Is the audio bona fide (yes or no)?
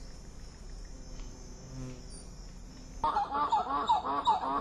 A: yes